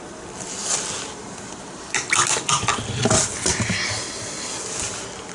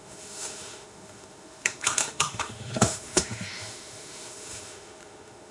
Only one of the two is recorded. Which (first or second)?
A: first